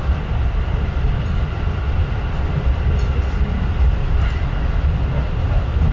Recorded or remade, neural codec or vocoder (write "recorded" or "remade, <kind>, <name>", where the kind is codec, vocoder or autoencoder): recorded